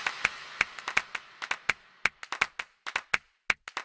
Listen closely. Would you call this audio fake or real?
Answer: real